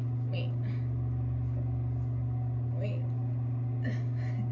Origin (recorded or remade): recorded